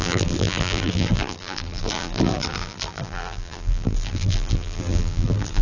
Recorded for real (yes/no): no